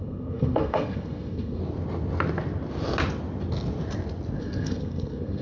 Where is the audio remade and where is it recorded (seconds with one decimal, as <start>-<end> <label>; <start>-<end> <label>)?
0.0-1.6 remade; 1.6-4.4 recorded; 4.4-5.4 remade